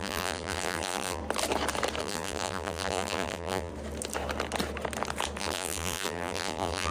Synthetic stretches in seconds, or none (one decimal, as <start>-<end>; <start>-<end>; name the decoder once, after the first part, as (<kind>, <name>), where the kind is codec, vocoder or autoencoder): 0.0-1.2 (vocoder, BigVGAN v2); 2.0-3.7; 5.4-6.9